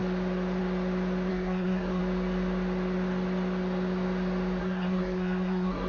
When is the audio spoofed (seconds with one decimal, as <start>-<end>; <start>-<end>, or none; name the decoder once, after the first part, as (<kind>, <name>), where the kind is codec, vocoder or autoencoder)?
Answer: 1.3-2.0 (codec, SNAC); 4.6-5.9